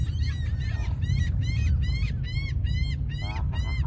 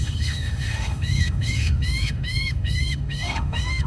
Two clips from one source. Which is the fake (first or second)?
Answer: second